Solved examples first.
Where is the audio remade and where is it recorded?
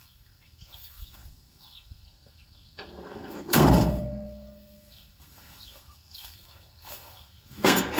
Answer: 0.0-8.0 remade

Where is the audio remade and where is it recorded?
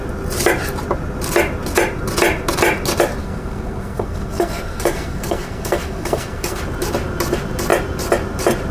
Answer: 0.0-3.2 recorded; 3.2-6.6 remade; 6.6-8.7 recorded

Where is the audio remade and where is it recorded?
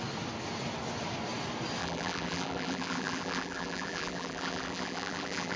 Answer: 0.0-1.8 recorded; 1.8-5.6 remade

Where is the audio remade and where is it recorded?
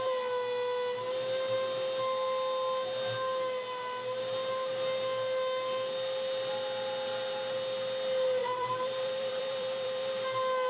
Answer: 0.0-8.4 recorded; 8.4-10.1 remade; 10.1-10.7 recorded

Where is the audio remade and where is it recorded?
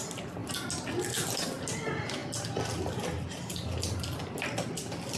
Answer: 0.0-5.2 recorded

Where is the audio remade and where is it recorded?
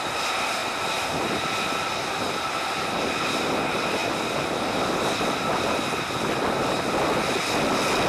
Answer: 0.0-8.1 recorded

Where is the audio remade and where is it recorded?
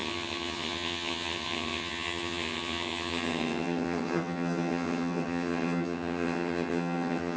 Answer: 0.0-7.4 remade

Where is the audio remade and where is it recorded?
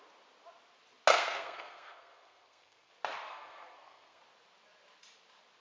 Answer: 0.0-1.1 recorded; 1.1-2.9 remade; 2.9-3.3 recorded; 3.3-4.2 remade; 4.2-5.6 recorded